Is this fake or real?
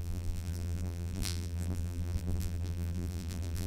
fake